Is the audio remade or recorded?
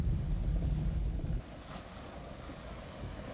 remade